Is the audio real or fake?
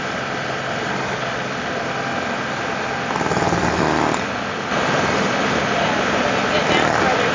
real